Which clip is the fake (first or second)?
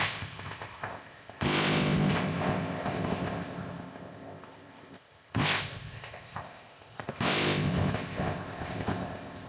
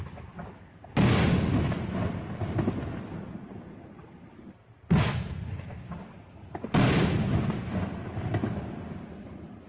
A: first